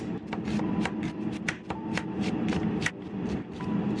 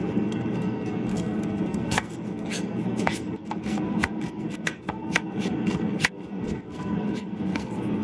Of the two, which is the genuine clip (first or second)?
first